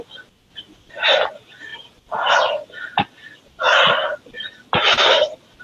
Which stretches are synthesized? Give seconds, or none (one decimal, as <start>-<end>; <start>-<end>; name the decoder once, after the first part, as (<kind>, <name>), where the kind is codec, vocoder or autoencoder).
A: none

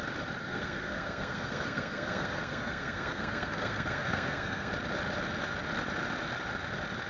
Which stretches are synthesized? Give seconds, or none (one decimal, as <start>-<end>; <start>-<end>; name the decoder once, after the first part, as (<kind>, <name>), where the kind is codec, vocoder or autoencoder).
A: 0.4-4.7 (codec, SNAC)

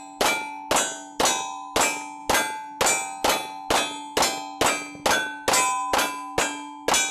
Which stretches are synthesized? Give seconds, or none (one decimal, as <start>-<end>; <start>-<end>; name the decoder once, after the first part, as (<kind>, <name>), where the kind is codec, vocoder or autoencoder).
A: none

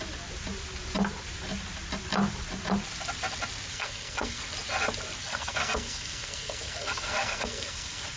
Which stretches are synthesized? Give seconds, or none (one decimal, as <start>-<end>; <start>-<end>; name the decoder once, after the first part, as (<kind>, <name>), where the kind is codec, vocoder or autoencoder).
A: 3.7-4.4 (codec, SNAC); 5.2-8.2

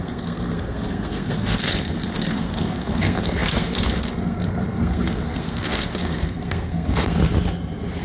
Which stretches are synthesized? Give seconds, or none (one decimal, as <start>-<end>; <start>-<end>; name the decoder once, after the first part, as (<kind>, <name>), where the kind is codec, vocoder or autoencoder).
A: 0.0-7.2 (codec, SNAC)

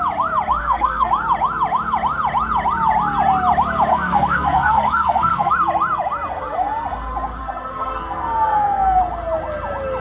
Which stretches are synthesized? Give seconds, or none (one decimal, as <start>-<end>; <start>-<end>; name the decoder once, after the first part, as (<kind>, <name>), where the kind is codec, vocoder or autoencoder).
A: 0.6-1.1 (codec, SNAC); 3.9-5.5; 7.4-9.0

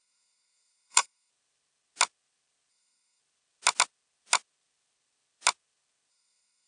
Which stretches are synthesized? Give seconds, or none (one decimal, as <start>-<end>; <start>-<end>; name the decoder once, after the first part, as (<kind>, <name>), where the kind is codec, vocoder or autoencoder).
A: 0.0-1.3 (codec, SNAC); 2.7-3.2; 6.1-6.7

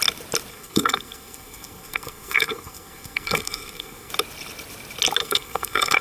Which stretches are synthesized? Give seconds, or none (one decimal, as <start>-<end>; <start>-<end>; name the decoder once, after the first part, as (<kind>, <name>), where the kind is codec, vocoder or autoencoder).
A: 0.5-4.1 (codec, SNAC); 5.2-6.0